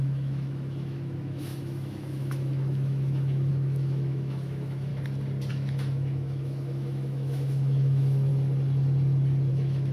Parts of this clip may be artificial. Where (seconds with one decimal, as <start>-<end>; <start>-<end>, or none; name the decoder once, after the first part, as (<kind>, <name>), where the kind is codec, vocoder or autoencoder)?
0.0-4.9 (autoencoder, DAC-VAE); 5.5-8.3; 9.5-9.9